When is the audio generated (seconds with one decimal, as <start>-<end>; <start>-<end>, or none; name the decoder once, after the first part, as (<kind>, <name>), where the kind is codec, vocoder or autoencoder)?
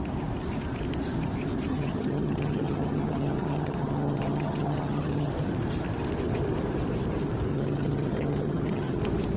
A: 1.7-5.3 (vocoder, HiFi-GAN); 7.5-9.0